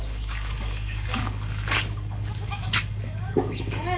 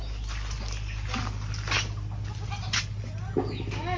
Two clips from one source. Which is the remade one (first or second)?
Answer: first